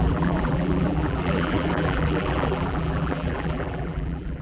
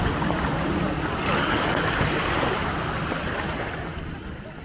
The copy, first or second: first